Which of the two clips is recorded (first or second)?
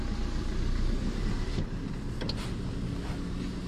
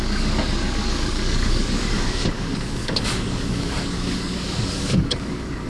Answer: first